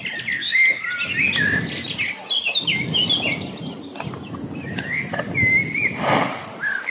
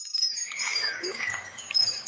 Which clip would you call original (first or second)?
first